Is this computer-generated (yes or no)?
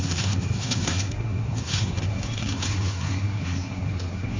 yes